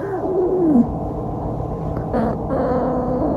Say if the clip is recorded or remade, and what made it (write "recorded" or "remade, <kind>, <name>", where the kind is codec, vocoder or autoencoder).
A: recorded